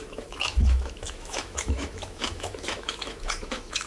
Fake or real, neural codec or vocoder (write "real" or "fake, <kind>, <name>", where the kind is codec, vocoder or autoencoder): fake, autoencoder, DAC-VAE